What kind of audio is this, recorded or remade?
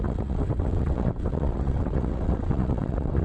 remade